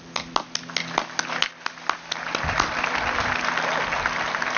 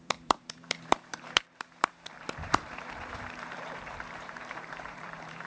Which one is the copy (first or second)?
second